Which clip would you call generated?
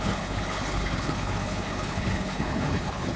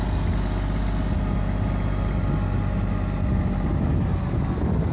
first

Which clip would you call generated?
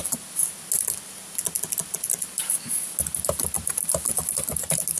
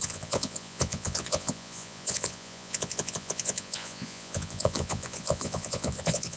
second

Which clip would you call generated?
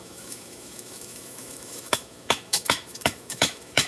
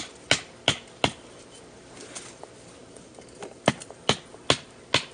first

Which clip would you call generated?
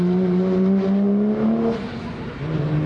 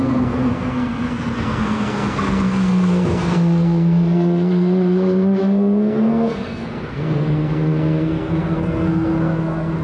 second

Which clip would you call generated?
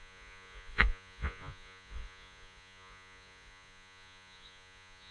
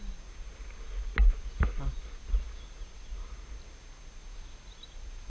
first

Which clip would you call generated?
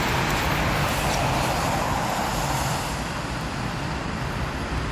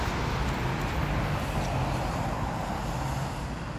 first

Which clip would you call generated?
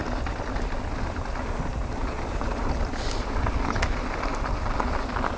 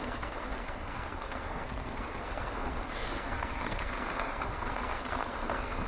second